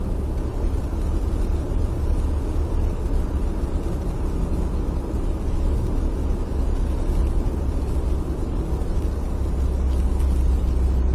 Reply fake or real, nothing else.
real